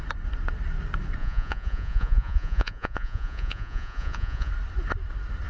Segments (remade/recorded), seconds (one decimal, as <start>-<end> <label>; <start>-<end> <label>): 0.0-1.2 recorded; 1.2-4.5 remade; 4.5-5.5 recorded